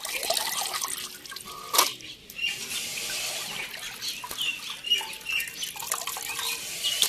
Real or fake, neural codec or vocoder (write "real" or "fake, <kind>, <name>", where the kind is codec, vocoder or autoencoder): real